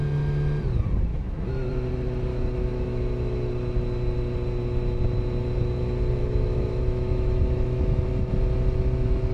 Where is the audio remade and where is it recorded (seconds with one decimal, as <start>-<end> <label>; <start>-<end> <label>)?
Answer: 0.0-1.1 recorded; 1.1-1.7 remade; 1.7-2.3 recorded; 2.3-3.5 remade; 3.5-6.2 recorded; 6.2-8.0 remade; 8.0-9.3 recorded